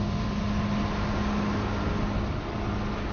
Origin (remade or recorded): recorded